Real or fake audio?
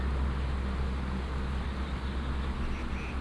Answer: real